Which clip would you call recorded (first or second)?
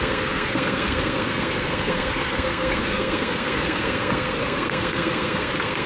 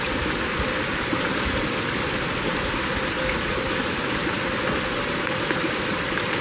second